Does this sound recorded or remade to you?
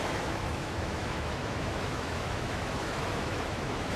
remade